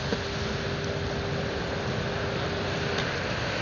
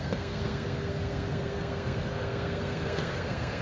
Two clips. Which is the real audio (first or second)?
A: first